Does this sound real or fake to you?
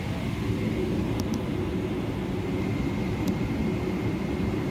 real